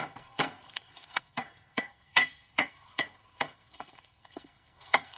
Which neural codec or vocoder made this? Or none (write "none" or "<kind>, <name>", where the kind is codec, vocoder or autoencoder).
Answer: codec, SNAC